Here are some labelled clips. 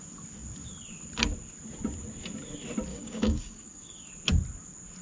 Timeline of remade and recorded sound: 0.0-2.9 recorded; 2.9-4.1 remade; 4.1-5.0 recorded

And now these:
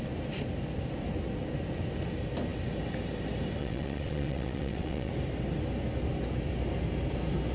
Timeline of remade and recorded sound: 0.0-3.6 recorded; 3.6-5.1 remade; 5.1-7.5 recorded

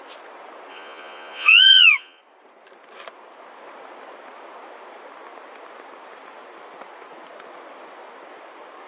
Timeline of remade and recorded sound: 0.0-0.7 recorded; 0.7-2.2 remade; 2.2-8.9 recorded

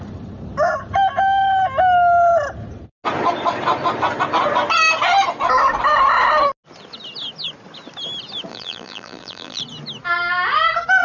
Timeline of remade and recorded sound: 0.0-8.5 recorded; 8.5-9.6 remade; 9.6-11.0 recorded